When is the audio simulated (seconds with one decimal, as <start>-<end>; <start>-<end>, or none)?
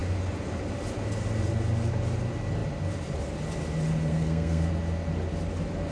4.1-4.7